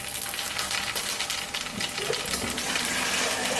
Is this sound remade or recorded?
recorded